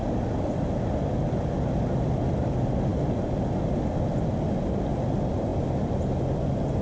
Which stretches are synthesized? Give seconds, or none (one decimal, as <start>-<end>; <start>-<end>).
none